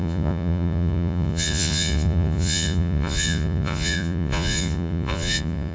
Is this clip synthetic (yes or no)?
yes